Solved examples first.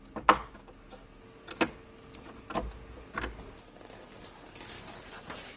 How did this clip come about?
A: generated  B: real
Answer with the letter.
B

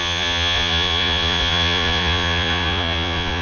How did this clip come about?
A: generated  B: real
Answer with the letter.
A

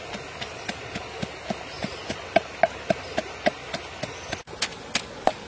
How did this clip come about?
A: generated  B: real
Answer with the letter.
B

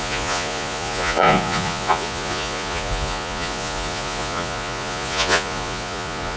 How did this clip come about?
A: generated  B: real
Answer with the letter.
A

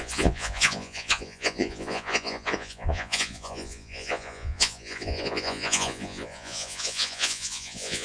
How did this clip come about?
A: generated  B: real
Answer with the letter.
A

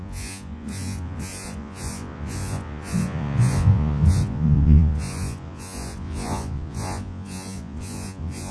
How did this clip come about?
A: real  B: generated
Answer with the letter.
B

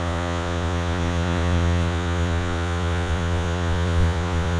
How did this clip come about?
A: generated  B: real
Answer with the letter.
A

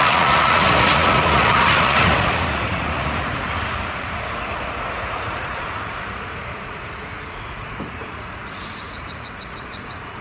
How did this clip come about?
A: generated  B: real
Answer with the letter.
A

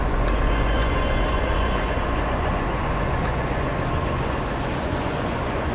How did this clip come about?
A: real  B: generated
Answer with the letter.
B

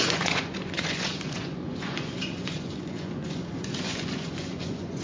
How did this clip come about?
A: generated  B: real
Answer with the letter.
A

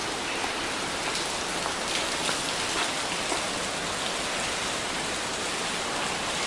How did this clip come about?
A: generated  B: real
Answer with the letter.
B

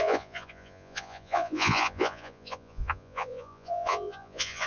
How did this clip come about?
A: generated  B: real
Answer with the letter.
A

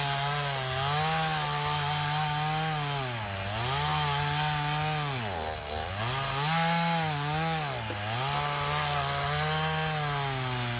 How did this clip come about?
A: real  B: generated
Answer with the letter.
A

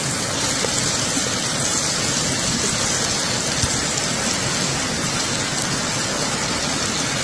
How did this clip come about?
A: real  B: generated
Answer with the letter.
A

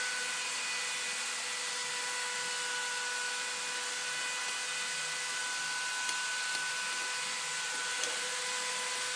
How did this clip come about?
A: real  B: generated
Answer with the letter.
A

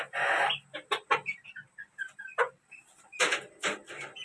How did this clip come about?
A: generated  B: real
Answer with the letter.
B